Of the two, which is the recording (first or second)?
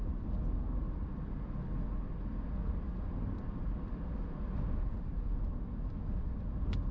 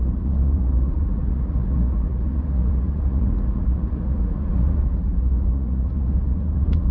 first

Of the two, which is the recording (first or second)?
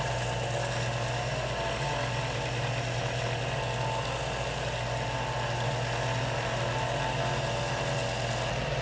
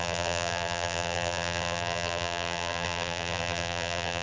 first